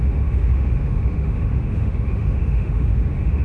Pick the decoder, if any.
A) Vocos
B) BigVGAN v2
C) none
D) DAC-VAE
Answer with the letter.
D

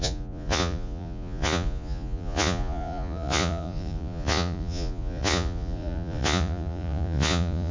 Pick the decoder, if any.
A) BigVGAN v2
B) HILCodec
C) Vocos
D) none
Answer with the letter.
C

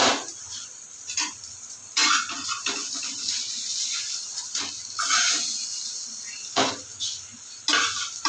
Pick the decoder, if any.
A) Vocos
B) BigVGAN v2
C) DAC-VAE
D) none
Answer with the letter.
D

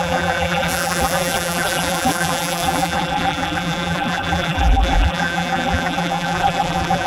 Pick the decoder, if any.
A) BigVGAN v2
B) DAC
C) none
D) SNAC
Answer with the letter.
A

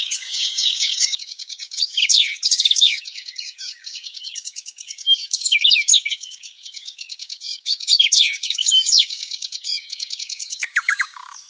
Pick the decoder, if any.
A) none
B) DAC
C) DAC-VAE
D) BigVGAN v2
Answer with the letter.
B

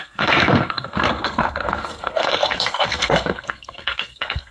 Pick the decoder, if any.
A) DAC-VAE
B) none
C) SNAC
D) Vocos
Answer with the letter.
C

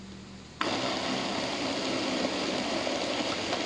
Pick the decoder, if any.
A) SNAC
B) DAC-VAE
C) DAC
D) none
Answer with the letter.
D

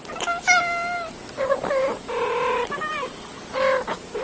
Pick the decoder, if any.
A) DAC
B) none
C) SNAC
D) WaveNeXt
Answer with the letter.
B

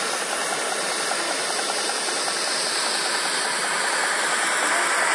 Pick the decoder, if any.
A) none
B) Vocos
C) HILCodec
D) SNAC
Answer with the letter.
A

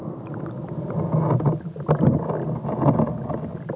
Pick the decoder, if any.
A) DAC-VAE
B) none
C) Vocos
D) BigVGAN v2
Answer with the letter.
B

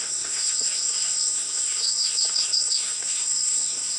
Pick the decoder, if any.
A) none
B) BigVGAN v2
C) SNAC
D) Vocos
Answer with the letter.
C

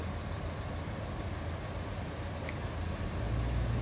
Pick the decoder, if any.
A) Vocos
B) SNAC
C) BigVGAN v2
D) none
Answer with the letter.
D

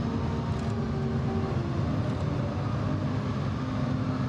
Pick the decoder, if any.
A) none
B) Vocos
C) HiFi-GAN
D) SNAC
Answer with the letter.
A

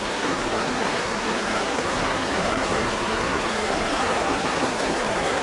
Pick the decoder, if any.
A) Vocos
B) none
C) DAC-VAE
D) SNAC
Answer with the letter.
D